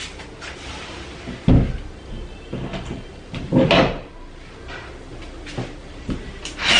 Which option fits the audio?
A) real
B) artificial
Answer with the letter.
A